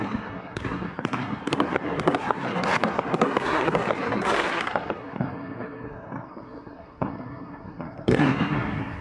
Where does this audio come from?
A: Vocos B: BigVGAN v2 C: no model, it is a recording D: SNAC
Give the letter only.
D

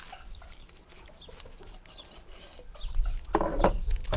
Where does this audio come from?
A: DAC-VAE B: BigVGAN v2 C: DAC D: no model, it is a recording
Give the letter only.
D